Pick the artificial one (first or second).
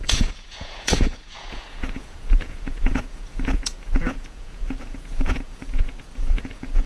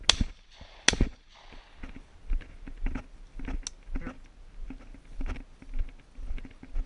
first